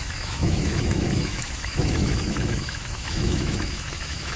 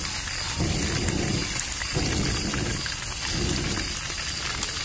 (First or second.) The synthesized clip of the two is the first